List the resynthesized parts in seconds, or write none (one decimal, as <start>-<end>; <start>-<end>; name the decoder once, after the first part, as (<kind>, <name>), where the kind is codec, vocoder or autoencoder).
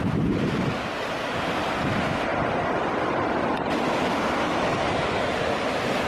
none